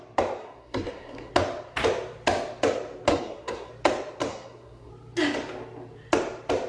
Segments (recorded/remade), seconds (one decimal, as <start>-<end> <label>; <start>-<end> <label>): 0.0-0.4 recorded; 0.4-1.3 remade; 1.3-3.1 recorded; 3.1-3.7 remade; 3.7-4.3 recorded; 4.3-4.9 remade; 4.9-6.7 recorded

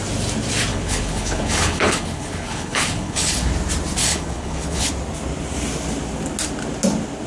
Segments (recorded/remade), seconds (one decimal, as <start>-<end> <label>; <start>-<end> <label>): 0.0-0.7 recorded; 0.7-3.5 remade; 3.5-4.0 recorded; 4.0-4.9 remade; 4.9-7.3 recorded

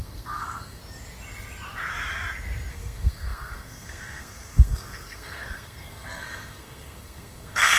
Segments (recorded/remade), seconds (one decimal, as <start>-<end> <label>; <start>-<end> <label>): 0.0-0.8 remade; 0.8-2.7 recorded; 2.7-7.8 remade

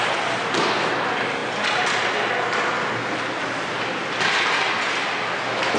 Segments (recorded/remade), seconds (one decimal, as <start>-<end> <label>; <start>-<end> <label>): 0.0-5.8 recorded

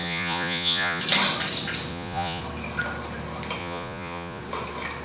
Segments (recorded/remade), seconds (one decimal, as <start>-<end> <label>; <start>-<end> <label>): 0.0-1.0 remade; 1.0-1.9 recorded; 1.9-2.4 remade; 2.4-3.6 recorded; 3.6-4.4 remade; 4.4-5.0 recorded

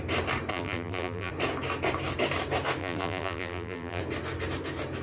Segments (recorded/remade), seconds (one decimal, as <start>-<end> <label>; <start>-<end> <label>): 0.0-0.5 recorded; 0.5-1.3 remade; 1.3-2.8 recorded; 2.8-4.0 remade; 4.0-5.0 recorded

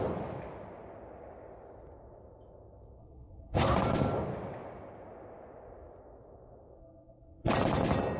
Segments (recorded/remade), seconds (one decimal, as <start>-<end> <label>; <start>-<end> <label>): 0.0-3.0 recorded; 3.0-3.8 remade; 3.8-6.8 recorded; 6.8-7.5 remade; 7.5-8.2 recorded

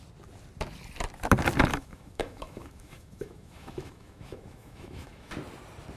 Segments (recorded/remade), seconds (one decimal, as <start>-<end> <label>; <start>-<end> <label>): 0.0-1.7 recorded; 1.7-5.3 remade; 5.3-6.0 recorded